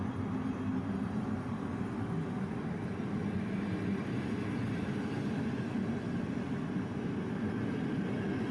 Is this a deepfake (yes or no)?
no